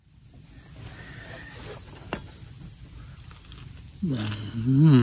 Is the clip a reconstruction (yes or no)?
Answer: no